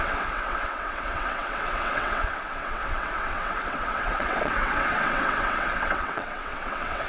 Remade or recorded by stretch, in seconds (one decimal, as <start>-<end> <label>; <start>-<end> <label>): 0.0-7.1 remade